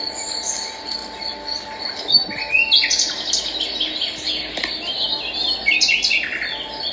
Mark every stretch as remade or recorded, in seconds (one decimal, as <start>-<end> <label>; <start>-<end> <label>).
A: 0.0-6.9 recorded

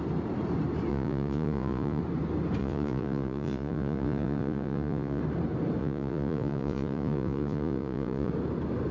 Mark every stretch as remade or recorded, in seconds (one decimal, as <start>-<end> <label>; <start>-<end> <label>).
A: 0.0-0.9 recorded; 0.9-2.0 remade; 2.0-2.6 recorded; 2.6-5.2 remade; 5.2-5.8 recorded; 5.8-8.3 remade; 8.3-8.9 recorded